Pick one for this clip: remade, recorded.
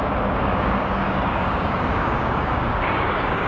remade